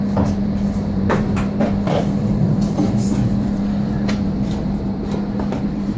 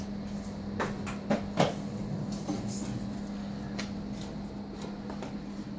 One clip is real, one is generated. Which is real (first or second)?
second